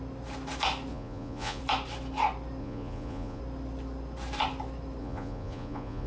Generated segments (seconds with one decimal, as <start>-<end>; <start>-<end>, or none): 0.9-1.6; 2.6-3.4; 5.0-6.1